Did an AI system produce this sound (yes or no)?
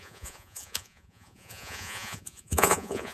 yes